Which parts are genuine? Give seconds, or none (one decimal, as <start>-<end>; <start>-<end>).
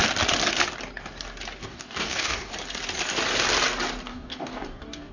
0.0-1.6; 2.5-4.1